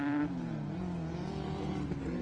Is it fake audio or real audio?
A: real